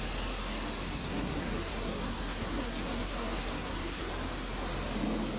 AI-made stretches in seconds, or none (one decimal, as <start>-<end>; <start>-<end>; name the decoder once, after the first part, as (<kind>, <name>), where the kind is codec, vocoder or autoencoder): 0.9-4.1 (codec, SNAC)